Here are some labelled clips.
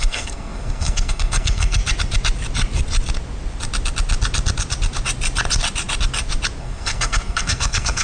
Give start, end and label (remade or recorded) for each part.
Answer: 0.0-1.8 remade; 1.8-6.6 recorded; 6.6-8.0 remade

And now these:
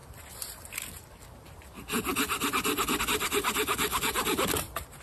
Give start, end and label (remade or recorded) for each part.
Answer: 0.0-5.0 recorded

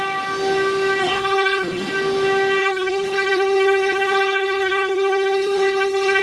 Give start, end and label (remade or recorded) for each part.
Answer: 0.0-1.0 recorded; 1.0-1.9 remade; 1.9-2.6 recorded; 2.6-6.2 remade

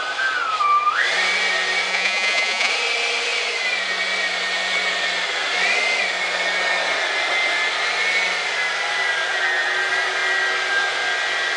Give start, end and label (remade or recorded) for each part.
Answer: 0.0-1.9 recorded; 1.9-2.7 remade; 2.7-11.6 recorded

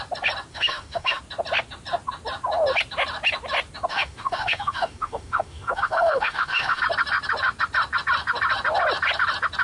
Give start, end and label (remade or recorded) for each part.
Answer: 0.0-0.5 recorded; 0.5-1.2 remade; 1.2-3.9 recorded; 3.9-6.8 remade; 6.8-9.6 recorded